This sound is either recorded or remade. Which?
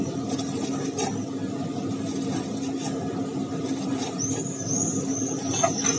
recorded